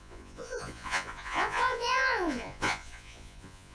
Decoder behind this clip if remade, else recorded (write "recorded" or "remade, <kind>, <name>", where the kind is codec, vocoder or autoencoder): remade, vocoder, Vocos